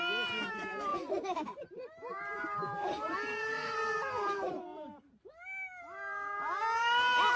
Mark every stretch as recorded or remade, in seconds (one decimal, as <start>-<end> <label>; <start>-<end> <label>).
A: 0.0-0.9 recorded; 0.9-5.3 remade; 5.3-7.4 recorded